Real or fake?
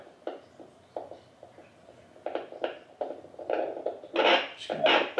real